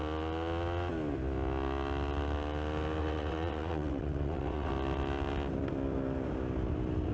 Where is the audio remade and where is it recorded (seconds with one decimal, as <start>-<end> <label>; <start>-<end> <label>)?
0.0-3.0 recorded; 3.0-4.7 remade; 4.7-7.1 recorded